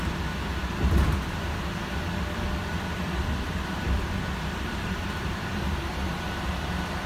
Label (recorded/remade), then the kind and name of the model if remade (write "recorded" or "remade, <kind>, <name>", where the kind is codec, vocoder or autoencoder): recorded